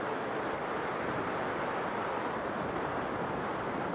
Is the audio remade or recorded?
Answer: recorded